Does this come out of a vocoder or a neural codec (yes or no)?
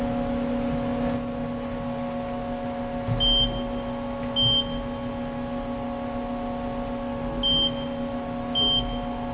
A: no